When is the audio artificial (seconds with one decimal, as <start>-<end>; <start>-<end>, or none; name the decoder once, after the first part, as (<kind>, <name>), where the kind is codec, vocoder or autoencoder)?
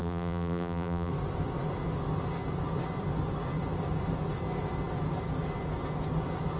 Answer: 0.0-1.1 (vocoder, BigVGAN v2)